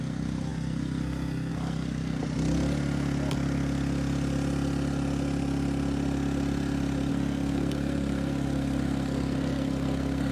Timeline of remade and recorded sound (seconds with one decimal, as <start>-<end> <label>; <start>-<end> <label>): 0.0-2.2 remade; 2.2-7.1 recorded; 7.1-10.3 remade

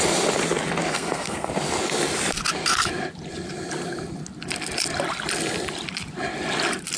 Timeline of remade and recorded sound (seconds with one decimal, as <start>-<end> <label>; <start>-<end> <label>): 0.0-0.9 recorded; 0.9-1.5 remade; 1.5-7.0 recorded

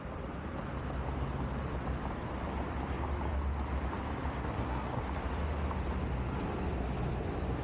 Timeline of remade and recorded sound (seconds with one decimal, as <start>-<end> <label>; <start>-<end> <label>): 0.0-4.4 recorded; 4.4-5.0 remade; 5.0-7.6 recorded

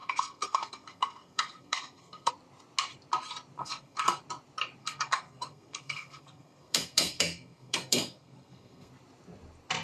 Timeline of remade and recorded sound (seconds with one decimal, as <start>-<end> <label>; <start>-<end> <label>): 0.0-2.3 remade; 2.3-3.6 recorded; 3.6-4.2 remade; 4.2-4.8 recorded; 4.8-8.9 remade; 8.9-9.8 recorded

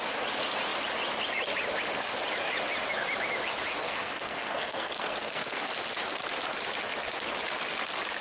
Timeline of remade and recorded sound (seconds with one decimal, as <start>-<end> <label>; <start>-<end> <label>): 0.0-3.8 recorded; 3.8-5.7 remade; 5.7-8.2 recorded

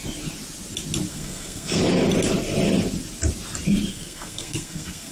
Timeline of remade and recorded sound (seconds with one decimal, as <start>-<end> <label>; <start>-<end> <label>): 0.0-1.1 recorded; 1.1-1.8 remade; 1.8-3.9 recorded; 3.9-5.1 remade

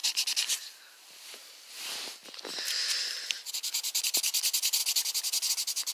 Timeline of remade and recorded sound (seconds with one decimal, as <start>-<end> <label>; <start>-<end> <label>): 0.0-5.9 recorded

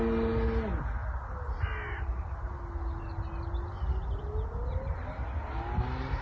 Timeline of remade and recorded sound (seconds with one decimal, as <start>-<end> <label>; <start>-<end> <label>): 0.0-6.2 recorded